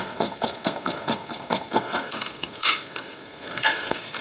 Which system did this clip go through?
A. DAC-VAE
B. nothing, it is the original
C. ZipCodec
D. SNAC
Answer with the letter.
D